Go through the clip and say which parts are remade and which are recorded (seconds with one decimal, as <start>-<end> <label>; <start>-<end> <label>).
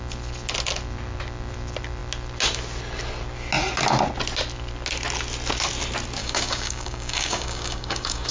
0.0-6.2 recorded; 6.2-8.3 remade